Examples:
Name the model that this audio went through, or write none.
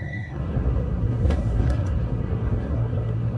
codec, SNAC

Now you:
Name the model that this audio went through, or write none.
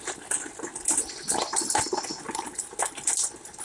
none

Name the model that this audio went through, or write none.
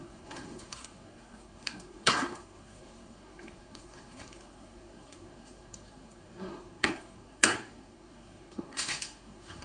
codec, SNAC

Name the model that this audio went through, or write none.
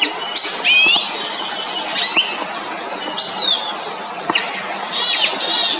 none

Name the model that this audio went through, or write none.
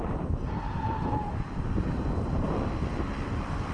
vocoder, BigVGAN v2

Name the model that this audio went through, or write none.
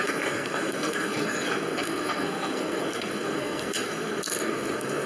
codec, SNAC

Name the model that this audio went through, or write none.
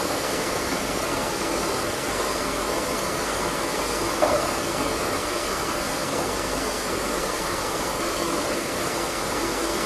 codec, SNAC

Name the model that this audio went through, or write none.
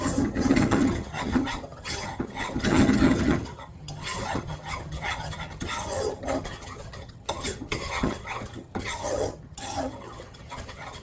vocoder, HiFi-GAN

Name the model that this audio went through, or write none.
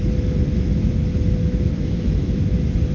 autoencoder, DAC-VAE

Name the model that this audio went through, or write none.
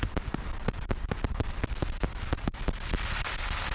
none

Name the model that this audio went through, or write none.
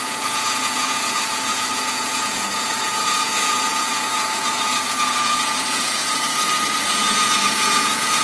vocoder, Vocos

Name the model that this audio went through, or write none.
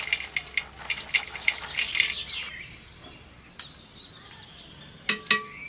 none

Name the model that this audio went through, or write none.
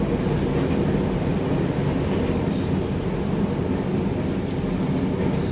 none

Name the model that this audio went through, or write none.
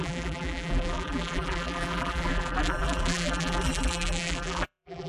vocoder, BigVGAN v2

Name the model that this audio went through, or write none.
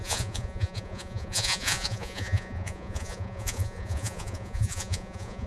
vocoder, Vocos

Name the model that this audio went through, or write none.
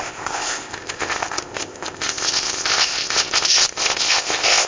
codec, ZipCodec